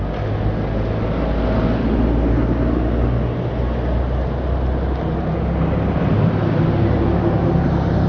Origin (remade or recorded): recorded